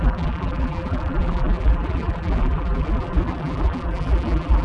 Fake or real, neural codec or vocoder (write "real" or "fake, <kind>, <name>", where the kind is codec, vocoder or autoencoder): fake, vocoder, BigVGAN v2